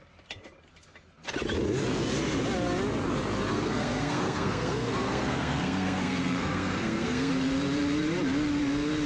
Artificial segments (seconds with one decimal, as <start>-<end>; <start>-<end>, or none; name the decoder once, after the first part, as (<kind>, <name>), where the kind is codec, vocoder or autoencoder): 3.5-7.3 (codec, SNAC)